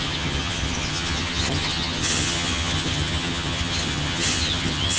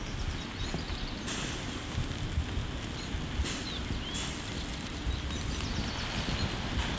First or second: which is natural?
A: second